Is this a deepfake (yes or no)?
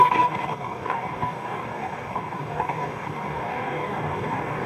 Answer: yes